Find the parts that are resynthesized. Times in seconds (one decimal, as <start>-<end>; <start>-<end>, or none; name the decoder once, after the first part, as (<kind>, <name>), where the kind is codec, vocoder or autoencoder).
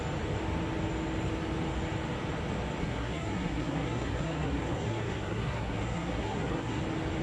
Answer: 2.8-6.8 (codec, SNAC)